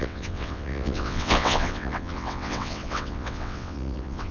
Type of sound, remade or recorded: remade